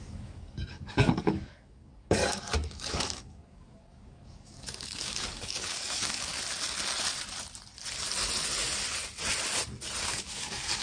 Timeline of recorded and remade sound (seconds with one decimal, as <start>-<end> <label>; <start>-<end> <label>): 0.0-6.3 remade; 6.3-10.0 recorded; 10.0-10.8 remade